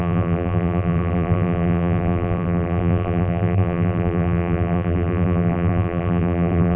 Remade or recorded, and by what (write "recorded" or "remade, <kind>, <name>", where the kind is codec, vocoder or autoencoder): remade, vocoder, BigVGAN v2